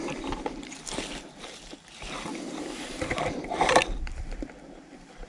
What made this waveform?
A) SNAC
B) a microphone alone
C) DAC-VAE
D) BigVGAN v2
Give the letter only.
D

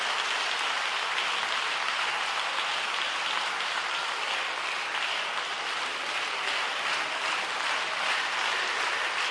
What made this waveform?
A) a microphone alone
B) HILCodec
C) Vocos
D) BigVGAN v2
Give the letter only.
A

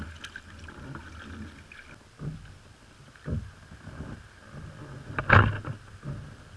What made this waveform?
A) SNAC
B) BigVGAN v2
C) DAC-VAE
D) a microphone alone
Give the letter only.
D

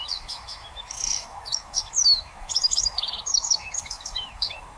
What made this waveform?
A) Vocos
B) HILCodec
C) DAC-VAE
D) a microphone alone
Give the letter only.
C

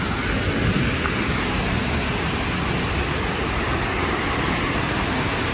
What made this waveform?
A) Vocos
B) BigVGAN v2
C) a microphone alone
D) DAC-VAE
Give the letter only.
C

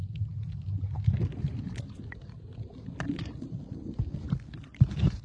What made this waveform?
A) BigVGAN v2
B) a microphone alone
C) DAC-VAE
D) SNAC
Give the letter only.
B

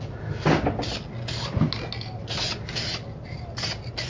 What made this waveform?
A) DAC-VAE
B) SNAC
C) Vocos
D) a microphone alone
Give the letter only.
D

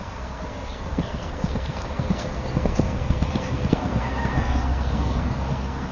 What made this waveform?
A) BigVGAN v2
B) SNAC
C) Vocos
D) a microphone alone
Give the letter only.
B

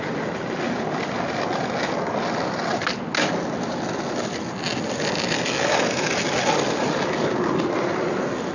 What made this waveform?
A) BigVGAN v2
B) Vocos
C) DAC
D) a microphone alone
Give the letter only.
D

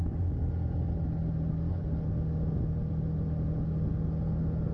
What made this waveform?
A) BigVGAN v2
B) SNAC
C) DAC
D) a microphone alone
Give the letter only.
D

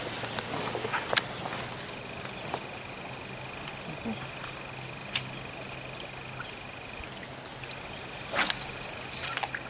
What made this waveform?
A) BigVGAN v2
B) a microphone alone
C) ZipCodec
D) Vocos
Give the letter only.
B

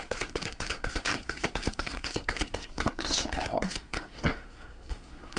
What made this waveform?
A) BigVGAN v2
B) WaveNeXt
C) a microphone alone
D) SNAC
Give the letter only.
D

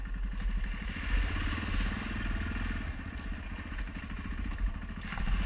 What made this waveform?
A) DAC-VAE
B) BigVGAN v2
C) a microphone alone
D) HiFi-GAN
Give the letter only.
C